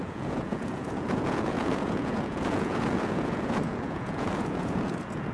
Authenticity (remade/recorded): remade